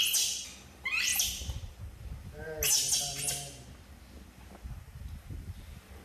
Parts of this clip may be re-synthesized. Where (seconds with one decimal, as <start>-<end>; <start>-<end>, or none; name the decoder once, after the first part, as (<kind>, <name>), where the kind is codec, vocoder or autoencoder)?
none